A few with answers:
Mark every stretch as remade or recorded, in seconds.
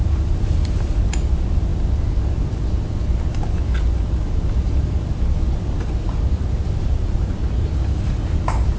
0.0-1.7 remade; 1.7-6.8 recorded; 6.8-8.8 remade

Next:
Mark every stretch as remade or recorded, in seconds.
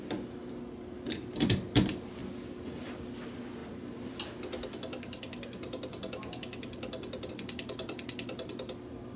0.0-9.2 recorded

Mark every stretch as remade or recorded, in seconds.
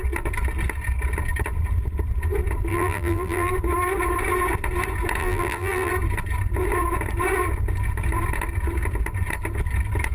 0.0-2.7 recorded; 2.7-3.5 remade; 3.5-5.2 recorded; 5.2-5.9 remade; 5.9-10.1 recorded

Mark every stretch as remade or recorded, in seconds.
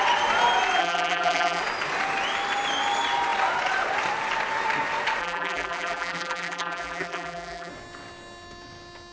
0.0-0.8 recorded; 0.8-1.6 remade; 1.6-5.2 recorded; 5.2-7.7 remade; 7.7-9.1 recorded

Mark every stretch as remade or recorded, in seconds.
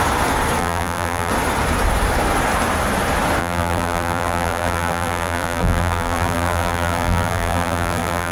0.0-0.6 recorded; 0.6-1.3 remade; 1.3-3.4 recorded; 3.4-8.3 remade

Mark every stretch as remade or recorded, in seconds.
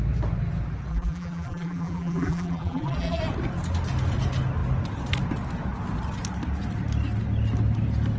0.0-0.9 recorded; 0.9-3.2 remade; 3.2-8.2 recorded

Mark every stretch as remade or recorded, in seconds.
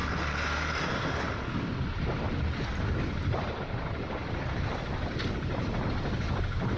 0.0-6.8 recorded